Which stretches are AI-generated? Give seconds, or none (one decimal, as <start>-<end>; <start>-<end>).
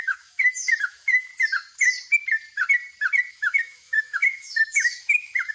0.0-1.3; 3.3-5.5